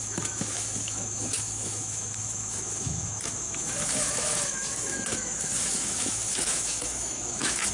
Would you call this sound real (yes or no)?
no